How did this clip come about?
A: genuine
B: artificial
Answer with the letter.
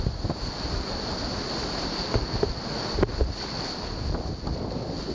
A